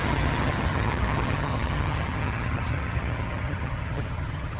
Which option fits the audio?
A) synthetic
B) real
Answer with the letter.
A